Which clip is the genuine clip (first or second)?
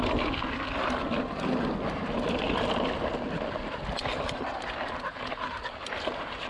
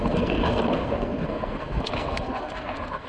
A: first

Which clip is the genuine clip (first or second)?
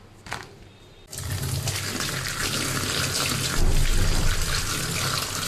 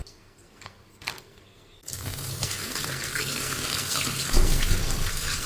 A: first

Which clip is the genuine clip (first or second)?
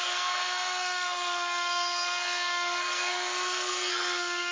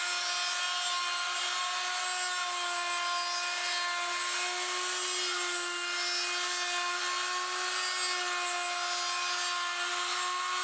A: second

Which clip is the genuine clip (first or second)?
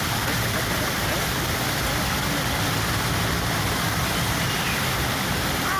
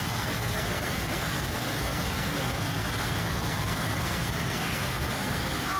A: first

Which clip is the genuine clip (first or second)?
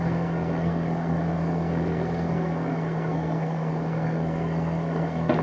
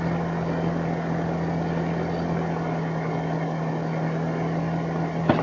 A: second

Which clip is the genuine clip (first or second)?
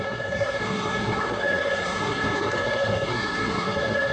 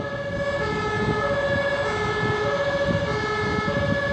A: second